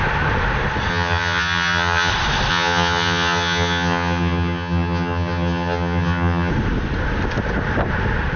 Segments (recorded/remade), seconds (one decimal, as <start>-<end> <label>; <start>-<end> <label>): 0.0-0.9 recorded; 0.9-2.1 remade; 2.1-2.5 recorded; 2.5-6.5 remade; 6.5-8.4 recorded